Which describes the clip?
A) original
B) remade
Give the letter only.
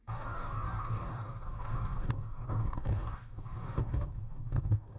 B